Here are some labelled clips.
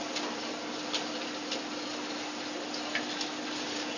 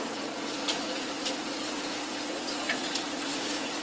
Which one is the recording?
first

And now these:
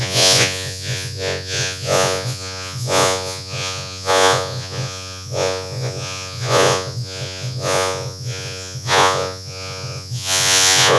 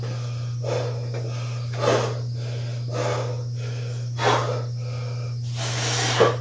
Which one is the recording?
second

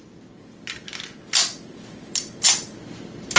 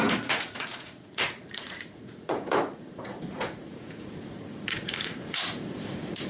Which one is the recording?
first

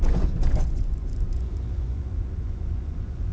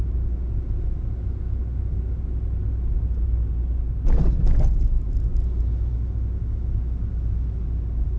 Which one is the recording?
second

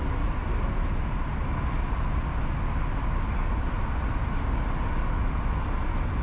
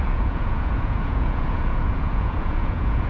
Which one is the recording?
first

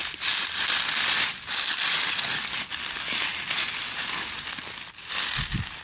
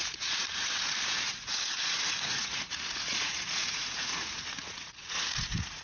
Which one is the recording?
first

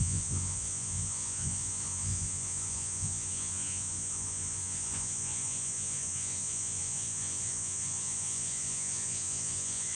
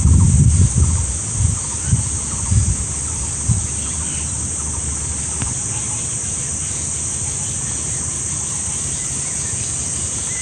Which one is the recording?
second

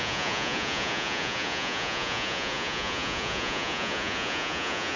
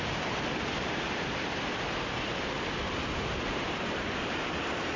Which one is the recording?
second